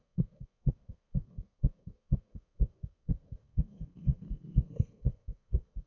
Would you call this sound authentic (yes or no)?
no